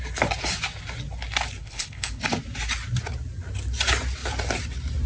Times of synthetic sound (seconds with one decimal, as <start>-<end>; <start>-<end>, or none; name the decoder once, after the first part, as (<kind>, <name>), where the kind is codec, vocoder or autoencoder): 1.6-2.2 (codec, HILCodec)